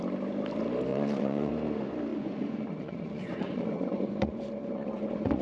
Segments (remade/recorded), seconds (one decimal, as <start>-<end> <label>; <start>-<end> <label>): 0.0-0.9 recorded; 0.9-1.5 remade; 1.5-2.1 recorded; 2.1-5.4 remade